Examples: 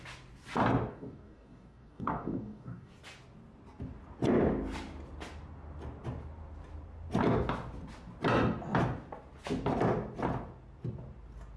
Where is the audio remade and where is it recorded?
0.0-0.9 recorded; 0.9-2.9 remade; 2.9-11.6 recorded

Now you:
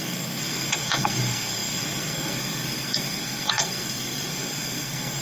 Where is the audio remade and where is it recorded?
0.0-5.2 remade

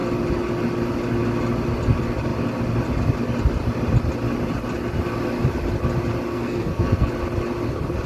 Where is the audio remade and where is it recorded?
0.0-6.3 recorded; 6.3-7.1 remade; 7.1-8.1 recorded

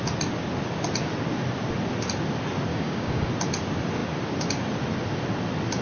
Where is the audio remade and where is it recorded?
0.0-2.7 recorded; 2.7-3.3 remade; 3.3-5.8 recorded

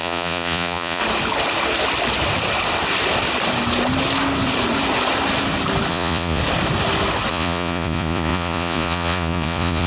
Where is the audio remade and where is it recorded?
0.0-1.0 remade; 1.0-5.9 recorded; 5.9-6.4 remade; 6.4-7.3 recorded; 7.3-9.9 remade

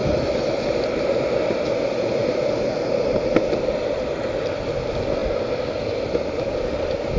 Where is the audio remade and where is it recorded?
0.0-0.6 remade; 0.6-7.2 recorded

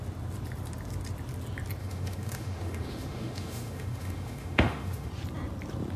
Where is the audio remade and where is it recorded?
0.0-1.8 recorded; 1.8-5.1 remade; 5.1-6.0 recorded